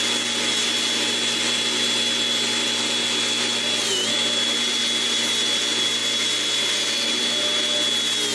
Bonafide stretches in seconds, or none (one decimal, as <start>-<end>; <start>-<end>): 0.0-8.3

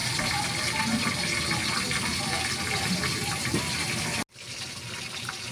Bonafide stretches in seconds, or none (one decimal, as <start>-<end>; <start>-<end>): 0.0-5.5

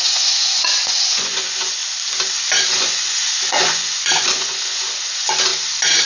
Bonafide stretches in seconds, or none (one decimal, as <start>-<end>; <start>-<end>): 1.8-2.7; 5.5-6.1

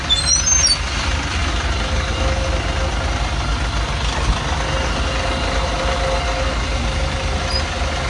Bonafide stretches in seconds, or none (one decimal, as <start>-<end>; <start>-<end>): 0.0-8.1

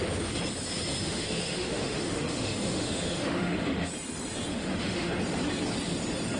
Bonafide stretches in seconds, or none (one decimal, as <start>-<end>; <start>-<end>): 0.0-1.0; 3.9-4.5; 5.1-6.4

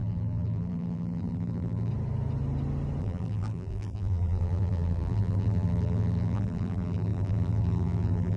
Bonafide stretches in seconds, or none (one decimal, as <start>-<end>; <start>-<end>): 1.9-3.0

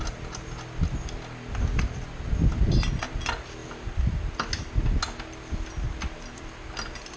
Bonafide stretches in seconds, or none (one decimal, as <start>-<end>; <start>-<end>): 0.0-7.2

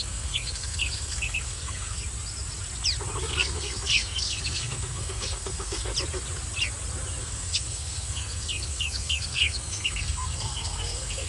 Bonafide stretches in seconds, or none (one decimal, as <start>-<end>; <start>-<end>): 2.0-3.2; 5.9-7.2